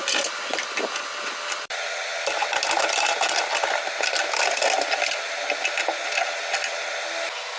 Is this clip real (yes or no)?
yes